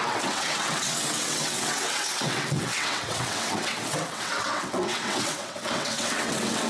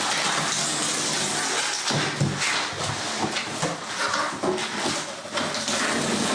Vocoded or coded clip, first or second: first